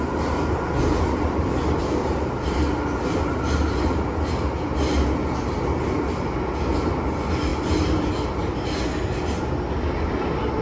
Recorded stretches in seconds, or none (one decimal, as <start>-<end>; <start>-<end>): 0.0-10.6